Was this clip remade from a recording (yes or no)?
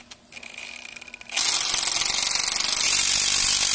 no